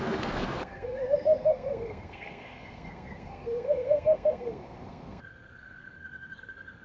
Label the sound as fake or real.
fake